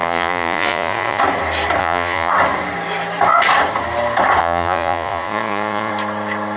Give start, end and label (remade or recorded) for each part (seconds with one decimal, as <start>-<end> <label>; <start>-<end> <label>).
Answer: 0.0-1.2 remade; 1.2-1.8 recorded; 1.8-2.3 remade; 2.3-4.4 recorded; 4.4-5.9 remade; 5.9-6.6 recorded